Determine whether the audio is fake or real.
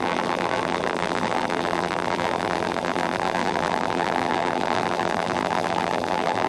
fake